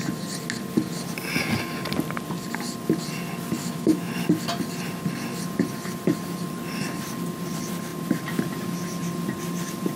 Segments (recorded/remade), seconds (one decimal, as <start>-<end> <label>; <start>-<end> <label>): 0.0-3.6 recorded; 3.6-4.1 remade; 4.1-10.0 recorded